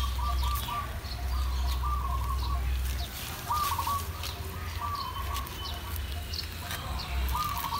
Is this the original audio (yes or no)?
yes